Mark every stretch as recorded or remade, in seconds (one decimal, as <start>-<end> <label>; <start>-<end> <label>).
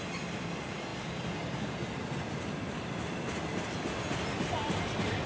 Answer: 0.0-5.3 recorded